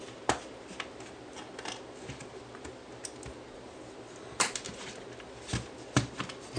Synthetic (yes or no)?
no